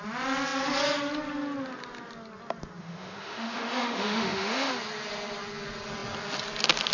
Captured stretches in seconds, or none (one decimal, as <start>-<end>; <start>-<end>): 0.0-2.8; 4.7-6.9